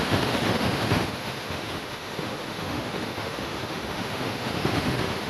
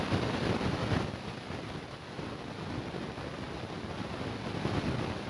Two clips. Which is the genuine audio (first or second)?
second